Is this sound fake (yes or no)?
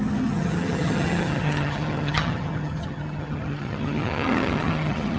yes